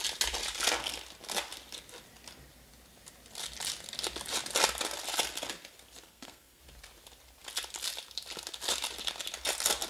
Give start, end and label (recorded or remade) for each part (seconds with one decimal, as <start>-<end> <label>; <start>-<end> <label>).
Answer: 0.0-6.1 recorded; 6.1-6.6 remade; 6.6-9.9 recorded